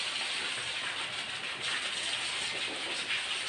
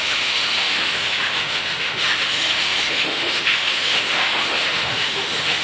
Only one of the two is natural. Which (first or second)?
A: first